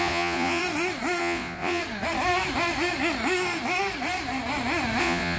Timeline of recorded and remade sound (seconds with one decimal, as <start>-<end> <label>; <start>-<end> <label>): 0.0-0.6 remade; 0.6-1.2 recorded; 1.2-1.8 remade; 1.8-5.0 recorded; 5.0-5.4 remade